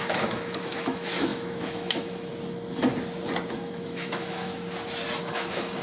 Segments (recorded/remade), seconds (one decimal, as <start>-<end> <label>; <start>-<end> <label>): 0.0-2.3 remade; 2.3-3.5 recorded; 3.5-4.5 remade; 4.5-5.2 recorded; 5.2-5.8 remade